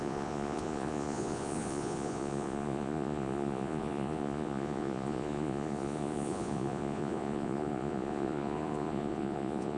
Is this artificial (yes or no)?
yes